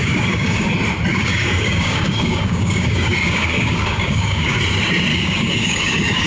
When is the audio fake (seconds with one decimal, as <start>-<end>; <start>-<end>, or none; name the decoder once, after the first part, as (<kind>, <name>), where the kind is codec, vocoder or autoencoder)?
0.0-0.7 (codec, DAC); 1.1-4.6; 5.1-6.3